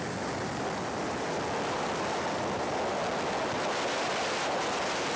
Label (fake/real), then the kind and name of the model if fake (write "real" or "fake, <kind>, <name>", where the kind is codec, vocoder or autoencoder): real